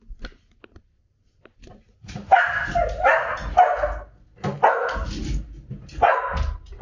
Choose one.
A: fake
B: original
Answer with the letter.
B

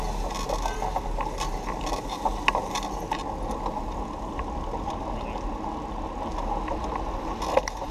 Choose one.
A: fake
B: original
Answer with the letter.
B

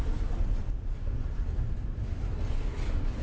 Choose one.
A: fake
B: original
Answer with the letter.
B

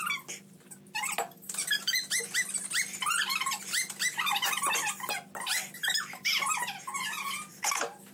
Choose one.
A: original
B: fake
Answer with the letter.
A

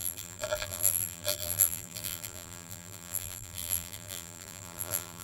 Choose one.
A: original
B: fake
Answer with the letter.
B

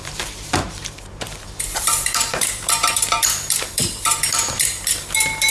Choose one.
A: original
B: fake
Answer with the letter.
B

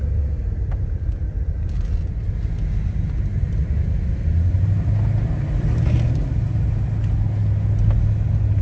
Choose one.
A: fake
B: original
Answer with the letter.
B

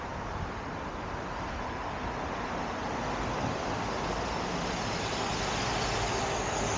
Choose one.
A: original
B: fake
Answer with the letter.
A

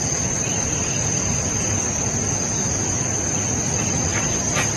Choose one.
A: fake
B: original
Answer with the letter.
B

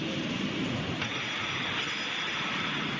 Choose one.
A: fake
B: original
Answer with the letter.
B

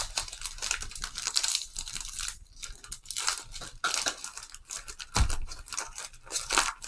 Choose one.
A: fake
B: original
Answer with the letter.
A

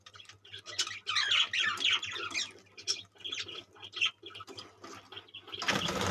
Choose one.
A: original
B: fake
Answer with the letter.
A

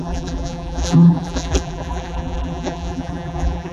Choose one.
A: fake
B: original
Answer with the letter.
A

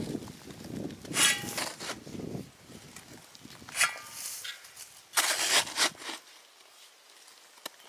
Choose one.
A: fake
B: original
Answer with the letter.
B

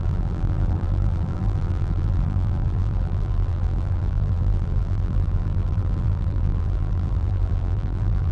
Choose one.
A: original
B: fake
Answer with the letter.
B